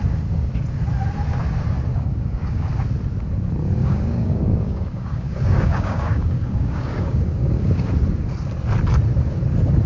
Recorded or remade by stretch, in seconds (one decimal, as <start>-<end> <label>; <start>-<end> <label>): 0.0-1.9 recorded; 1.9-2.7 remade; 2.7-3.8 recorded; 3.8-7.9 remade; 7.9-9.9 recorded